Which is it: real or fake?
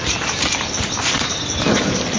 real